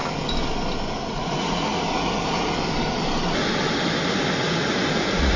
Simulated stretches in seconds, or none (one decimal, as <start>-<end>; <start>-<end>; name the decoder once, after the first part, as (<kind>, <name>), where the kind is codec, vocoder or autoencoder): 1.1-1.7 (vocoder, Vocos); 4.9-5.4